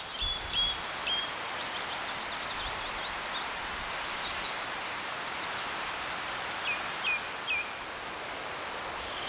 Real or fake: real